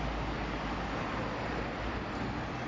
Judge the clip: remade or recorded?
recorded